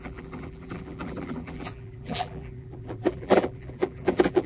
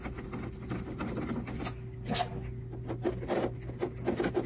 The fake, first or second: first